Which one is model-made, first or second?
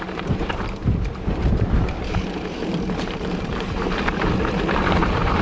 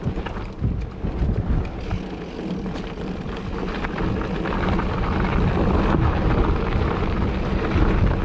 first